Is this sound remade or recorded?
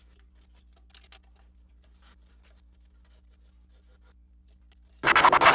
recorded